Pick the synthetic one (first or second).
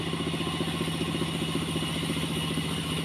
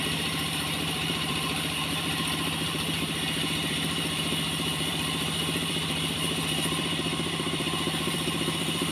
second